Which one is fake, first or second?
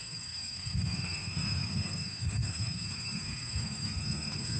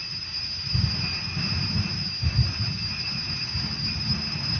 first